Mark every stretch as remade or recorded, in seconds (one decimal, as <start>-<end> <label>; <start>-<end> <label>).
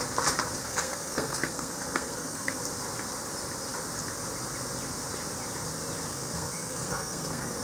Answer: 0.0-0.6 recorded; 0.6-2.6 remade; 2.6-6.1 recorded; 6.1-7.6 remade